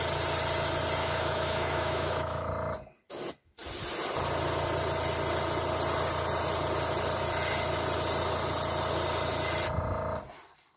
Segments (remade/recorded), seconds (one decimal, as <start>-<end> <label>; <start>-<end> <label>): 0.0-1.0 recorded; 1.0-2.5 remade; 2.5-10.8 recorded